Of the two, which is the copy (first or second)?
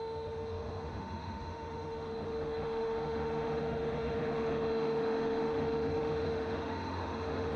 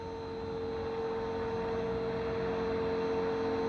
first